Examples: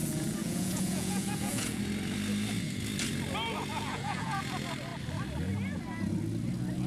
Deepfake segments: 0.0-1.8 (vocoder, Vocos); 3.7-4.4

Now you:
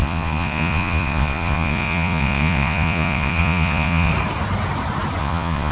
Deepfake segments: 0.0-4.1 (vocoder, Vocos); 5.2-5.7